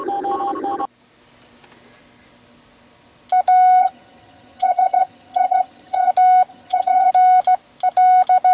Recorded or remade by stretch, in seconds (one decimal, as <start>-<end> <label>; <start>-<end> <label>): 0.0-3.8 recorded; 3.8-6.1 remade; 6.1-6.5 recorded; 6.5-7.1 remade; 7.1-8.5 recorded